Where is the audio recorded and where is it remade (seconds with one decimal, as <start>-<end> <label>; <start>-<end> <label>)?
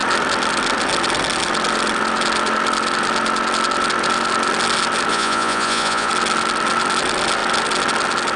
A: 0.0-5.1 recorded; 5.1-6.1 remade; 6.1-8.4 recorded